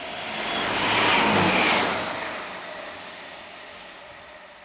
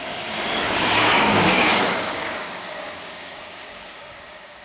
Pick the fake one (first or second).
second